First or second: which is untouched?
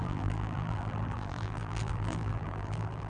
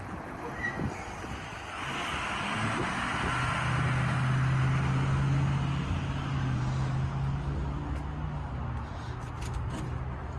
second